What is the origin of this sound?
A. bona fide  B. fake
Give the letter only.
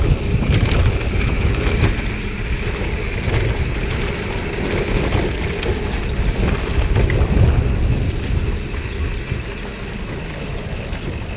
A